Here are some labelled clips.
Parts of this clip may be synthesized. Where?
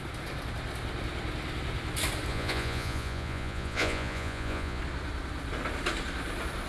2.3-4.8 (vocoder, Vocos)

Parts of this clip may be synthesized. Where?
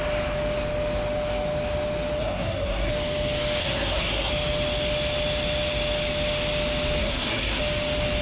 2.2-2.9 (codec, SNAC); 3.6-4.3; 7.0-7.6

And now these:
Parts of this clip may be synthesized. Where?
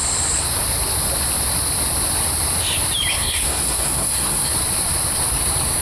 3.1-4.5 (codec, SNAC)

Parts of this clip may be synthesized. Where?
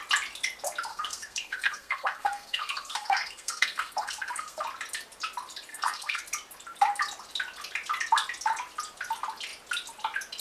0.9-4.6 (codec, SNAC); 5.7-6.2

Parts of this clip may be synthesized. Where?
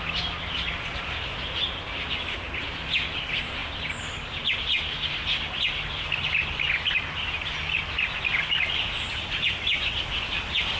none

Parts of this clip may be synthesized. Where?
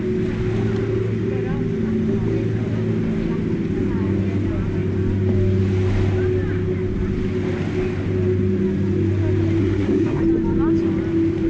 9.6-10.2 (codec, SNAC)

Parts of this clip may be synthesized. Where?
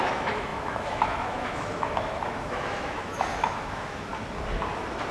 0.0-4.1 (autoencoder, DAC-VAE)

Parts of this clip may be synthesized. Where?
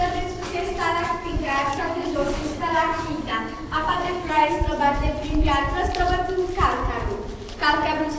1.1-4.6 (codec, DAC)